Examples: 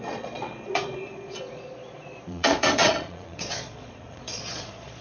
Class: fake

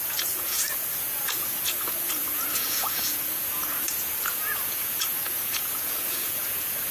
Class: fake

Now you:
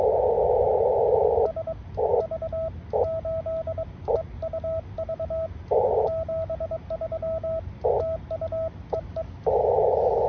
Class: real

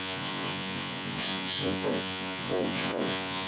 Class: fake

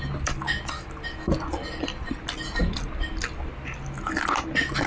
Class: real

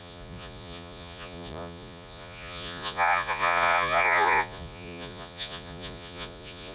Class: fake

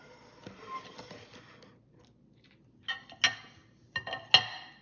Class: real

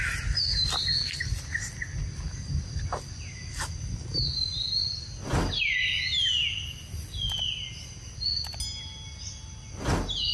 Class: real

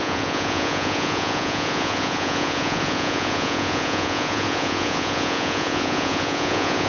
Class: fake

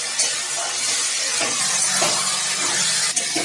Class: real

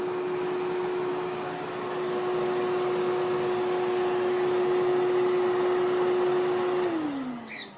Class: real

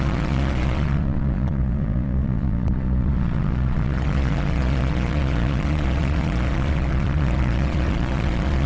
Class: fake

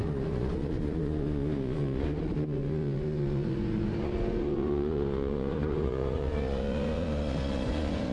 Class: fake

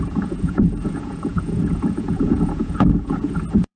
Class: fake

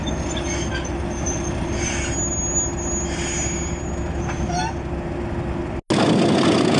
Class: real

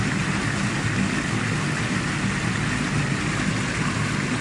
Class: real